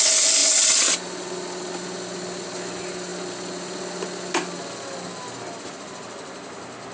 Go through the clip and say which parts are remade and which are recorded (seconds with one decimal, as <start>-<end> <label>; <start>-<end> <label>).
0.0-6.9 recorded